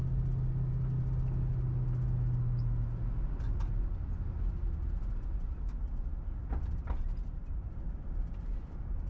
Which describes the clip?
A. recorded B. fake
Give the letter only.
A